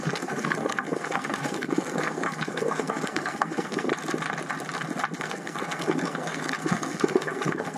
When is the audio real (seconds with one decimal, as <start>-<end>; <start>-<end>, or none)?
3.9-5.2